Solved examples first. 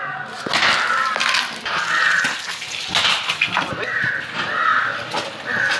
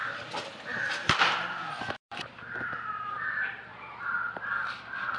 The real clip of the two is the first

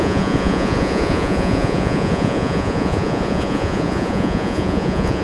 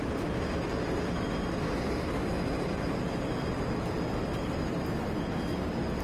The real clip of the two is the second